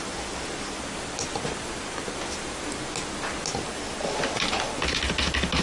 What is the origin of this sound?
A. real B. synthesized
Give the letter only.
A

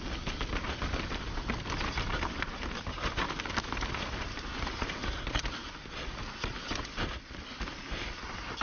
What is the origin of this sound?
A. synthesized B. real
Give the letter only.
B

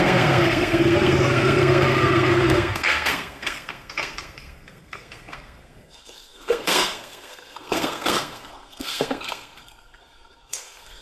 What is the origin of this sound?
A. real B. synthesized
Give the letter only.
B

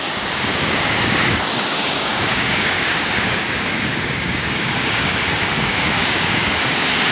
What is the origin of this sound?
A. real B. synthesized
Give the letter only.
B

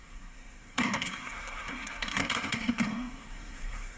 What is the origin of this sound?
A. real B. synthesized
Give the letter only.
B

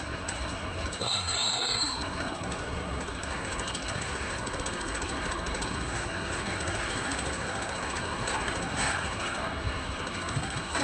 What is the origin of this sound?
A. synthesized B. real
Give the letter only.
A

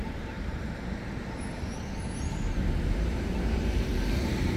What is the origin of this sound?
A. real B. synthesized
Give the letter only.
B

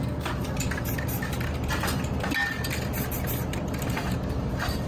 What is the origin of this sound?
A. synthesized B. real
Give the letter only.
B